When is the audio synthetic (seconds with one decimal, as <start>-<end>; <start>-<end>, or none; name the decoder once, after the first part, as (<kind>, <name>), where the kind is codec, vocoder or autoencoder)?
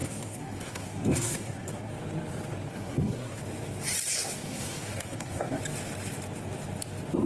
0.0-1.9 (codec, SNAC); 2.7-3.4; 4.4-5.6